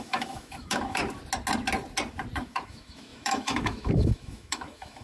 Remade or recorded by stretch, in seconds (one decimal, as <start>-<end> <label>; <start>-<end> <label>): 0.0-1.0 remade; 1.0-2.4 recorded; 2.4-5.0 remade